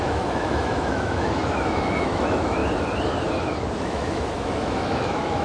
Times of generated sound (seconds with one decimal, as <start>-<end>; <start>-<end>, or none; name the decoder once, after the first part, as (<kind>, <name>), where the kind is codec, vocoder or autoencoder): 0.0-2.6 (autoencoder, DAC-VAE); 3.8-5.4